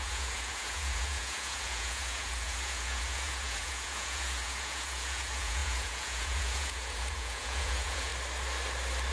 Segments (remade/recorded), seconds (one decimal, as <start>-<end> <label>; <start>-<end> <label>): 0.0-8.1 remade; 8.1-9.1 recorded